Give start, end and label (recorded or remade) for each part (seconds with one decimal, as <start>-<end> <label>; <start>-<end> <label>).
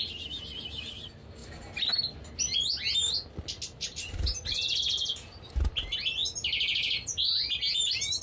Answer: 0.0-8.2 recorded